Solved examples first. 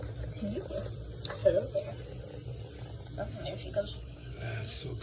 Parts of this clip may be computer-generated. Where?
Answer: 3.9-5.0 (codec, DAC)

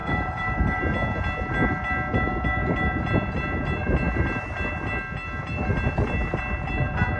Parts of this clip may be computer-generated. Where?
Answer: 0.0-0.8 (codec, DAC)

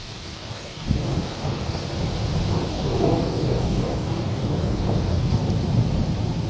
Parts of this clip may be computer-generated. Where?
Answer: 0.0-1.8 (codec, DAC); 2.7-5.4

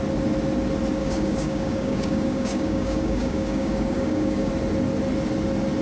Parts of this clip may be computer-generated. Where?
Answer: 1.0-4.5 (codec, DAC)